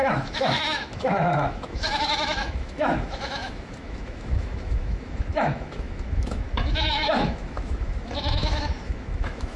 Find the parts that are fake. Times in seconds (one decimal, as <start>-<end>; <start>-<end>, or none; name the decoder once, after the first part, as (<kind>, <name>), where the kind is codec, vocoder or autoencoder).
0.0-9.6 (autoencoder, DAC-VAE)